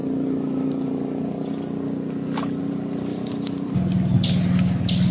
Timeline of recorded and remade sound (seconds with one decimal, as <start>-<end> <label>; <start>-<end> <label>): 0.0-3.1 recorded; 3.1-3.7 remade; 3.7-5.1 recorded